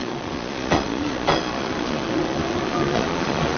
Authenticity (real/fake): fake